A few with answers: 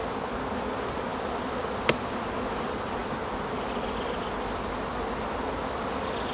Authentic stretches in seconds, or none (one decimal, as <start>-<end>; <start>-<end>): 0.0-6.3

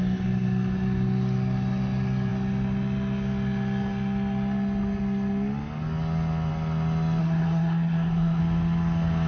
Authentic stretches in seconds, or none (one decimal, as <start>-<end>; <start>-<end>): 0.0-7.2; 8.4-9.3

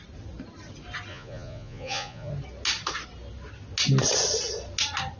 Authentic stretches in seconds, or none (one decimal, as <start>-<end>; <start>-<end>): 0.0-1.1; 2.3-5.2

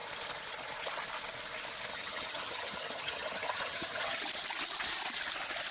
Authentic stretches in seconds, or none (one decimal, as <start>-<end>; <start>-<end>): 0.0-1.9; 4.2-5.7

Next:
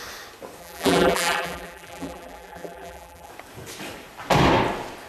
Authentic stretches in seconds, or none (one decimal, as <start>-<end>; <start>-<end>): 0.0-0.6; 3.3-5.1

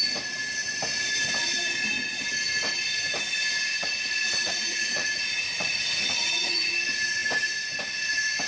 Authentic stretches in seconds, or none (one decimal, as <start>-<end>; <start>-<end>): 0.0-3.7; 6.7-8.5